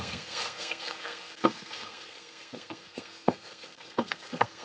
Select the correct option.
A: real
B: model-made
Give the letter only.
B